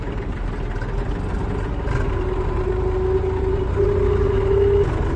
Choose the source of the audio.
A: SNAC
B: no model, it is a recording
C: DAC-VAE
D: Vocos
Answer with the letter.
B